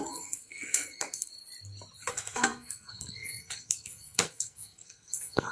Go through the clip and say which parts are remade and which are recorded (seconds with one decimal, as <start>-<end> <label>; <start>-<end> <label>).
0.0-1.3 remade; 1.3-2.1 recorded; 2.1-5.5 remade